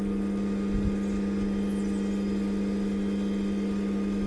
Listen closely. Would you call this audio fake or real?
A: real